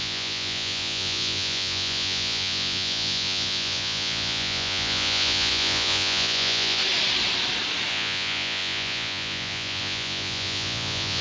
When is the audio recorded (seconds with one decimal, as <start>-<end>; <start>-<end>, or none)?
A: 6.8-7.9

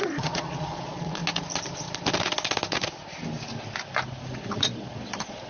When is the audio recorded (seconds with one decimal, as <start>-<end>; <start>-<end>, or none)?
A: 1.2-4.5

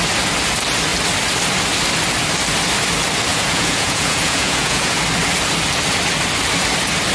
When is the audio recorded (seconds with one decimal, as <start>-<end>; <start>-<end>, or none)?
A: 0.0-3.3; 5.0-7.1

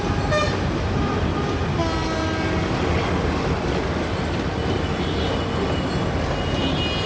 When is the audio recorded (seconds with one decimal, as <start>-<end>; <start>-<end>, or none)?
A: 0.0-7.1

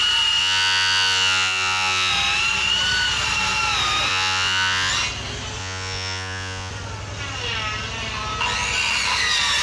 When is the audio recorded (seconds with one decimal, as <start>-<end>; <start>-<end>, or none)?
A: 0.0-0.4; 2.1-4.1; 4.9-5.6; 6.7-9.6

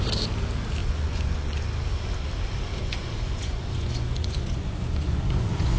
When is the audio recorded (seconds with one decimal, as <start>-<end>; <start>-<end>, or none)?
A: 0.0-0.8; 1.5-2.8

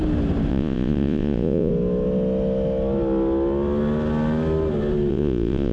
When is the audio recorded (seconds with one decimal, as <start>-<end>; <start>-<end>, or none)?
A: 0.0-0.5; 1.7-5.1